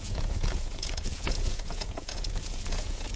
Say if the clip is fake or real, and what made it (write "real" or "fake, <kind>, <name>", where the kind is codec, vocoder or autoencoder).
fake, vocoder, Vocos